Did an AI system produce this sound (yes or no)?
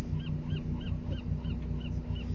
no